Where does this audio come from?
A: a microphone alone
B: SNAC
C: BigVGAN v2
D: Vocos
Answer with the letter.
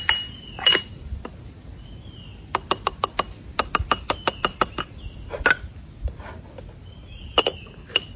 A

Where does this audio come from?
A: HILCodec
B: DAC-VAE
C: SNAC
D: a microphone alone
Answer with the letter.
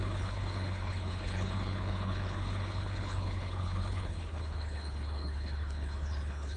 A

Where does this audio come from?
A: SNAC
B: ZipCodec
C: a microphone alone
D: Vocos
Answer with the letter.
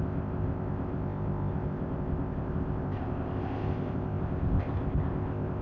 B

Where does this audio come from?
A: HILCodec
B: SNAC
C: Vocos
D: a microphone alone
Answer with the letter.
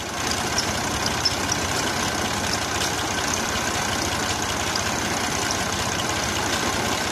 D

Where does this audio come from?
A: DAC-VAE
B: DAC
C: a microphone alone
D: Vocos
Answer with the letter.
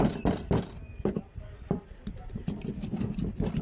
C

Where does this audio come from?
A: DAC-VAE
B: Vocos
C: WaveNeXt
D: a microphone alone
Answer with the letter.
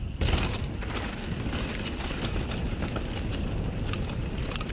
D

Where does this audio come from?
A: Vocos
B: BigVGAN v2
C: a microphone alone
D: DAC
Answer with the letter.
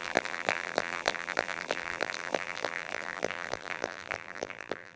B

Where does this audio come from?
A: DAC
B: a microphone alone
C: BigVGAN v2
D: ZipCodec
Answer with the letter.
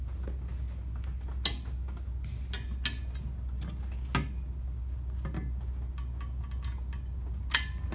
B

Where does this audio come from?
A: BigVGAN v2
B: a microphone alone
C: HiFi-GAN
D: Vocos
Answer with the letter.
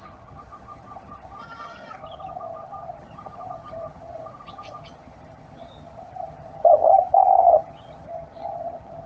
C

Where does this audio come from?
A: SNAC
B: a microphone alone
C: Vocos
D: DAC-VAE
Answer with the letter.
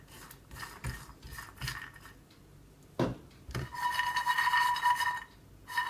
B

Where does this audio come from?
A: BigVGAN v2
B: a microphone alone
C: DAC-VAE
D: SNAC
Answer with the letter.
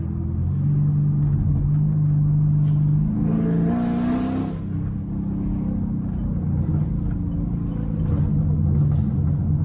B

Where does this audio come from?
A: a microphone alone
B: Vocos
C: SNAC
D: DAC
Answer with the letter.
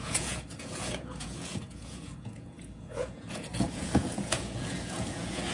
B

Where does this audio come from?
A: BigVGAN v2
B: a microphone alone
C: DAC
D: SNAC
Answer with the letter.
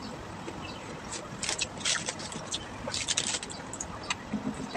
B